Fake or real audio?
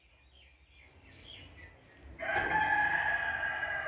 real